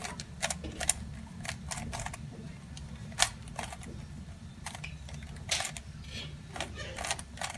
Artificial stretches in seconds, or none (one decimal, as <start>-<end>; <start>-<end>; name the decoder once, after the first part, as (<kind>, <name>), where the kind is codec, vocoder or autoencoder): none